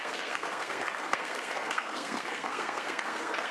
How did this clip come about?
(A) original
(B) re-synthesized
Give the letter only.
B